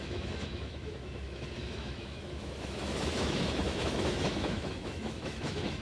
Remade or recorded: remade